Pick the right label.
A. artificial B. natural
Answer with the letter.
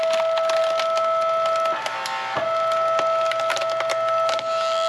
B